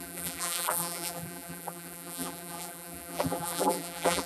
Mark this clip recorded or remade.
remade